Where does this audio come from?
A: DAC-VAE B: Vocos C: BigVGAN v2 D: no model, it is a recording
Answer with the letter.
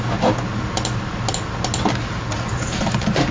D